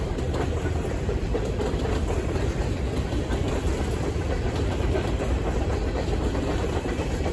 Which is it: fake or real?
fake